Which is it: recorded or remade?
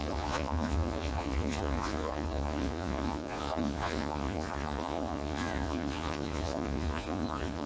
remade